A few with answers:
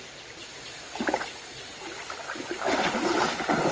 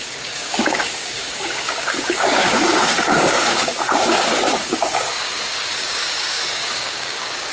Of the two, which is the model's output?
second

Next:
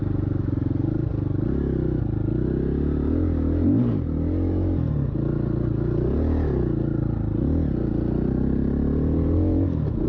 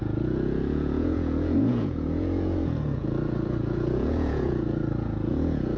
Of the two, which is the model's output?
second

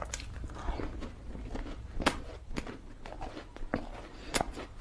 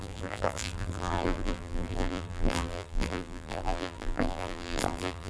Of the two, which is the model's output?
second